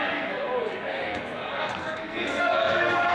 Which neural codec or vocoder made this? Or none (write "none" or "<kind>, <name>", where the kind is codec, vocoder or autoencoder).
codec, SNAC